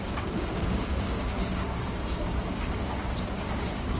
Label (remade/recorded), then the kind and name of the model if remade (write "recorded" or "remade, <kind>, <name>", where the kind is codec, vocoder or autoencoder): remade, codec, DAC